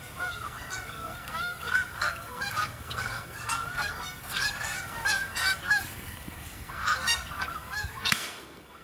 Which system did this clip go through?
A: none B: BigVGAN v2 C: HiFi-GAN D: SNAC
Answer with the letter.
D